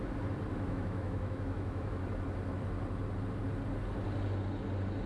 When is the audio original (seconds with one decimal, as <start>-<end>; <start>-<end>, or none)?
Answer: 0.0-0.5; 2.0-5.1